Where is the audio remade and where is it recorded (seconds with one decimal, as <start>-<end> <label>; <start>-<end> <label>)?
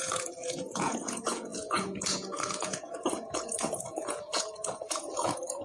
0.0-5.6 remade